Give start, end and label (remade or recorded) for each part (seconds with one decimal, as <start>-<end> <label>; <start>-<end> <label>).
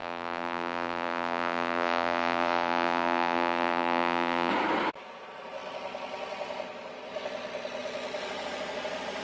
0.0-4.5 remade; 4.5-9.2 recorded